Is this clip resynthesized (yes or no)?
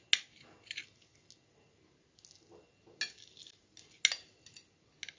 no